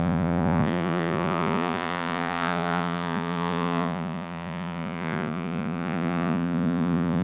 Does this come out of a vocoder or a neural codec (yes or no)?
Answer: yes